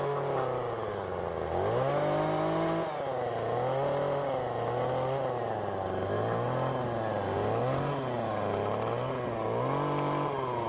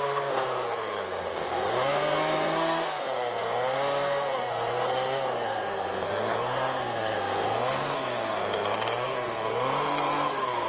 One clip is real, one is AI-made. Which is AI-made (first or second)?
second